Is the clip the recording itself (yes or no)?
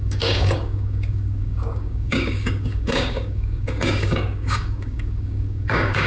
no